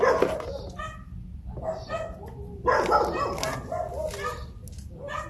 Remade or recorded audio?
recorded